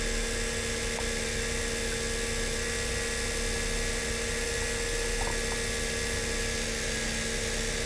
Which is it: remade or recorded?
recorded